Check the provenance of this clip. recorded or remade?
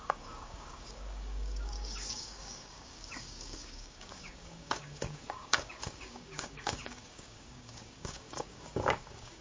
remade